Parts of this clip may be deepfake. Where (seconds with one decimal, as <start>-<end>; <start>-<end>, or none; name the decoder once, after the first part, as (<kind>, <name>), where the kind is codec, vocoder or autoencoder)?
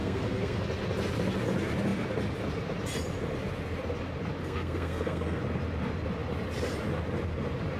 0.0-0.6 (codec, SNAC); 4.4-5.4